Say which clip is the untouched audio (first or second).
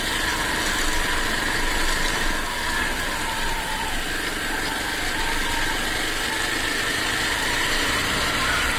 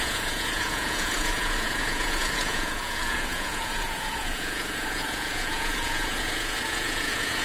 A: first